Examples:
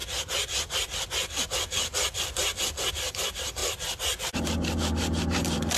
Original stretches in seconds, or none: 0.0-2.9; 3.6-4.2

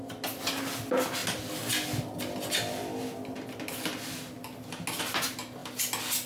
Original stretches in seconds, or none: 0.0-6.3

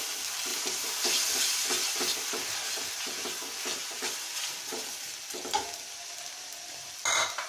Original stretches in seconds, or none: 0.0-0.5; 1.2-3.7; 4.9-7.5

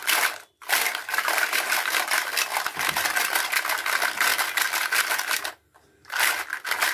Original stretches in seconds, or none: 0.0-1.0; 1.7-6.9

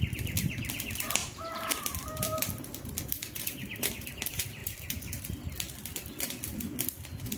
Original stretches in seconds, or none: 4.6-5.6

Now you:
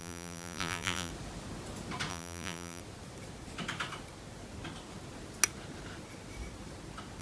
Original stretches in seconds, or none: 1.1-2.1; 2.8-7.2